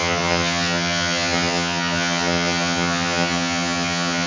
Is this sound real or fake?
fake